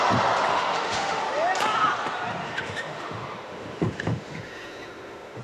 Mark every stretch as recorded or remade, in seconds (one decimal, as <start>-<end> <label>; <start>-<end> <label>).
0.0-0.5 recorded; 0.5-1.2 remade; 1.2-2.4 recorded; 2.4-5.4 remade